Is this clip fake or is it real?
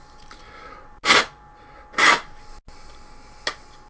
real